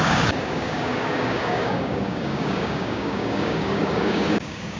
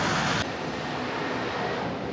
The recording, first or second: second